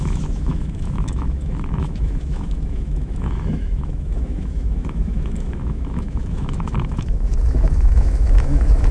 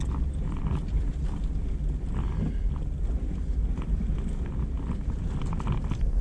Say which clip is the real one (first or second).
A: second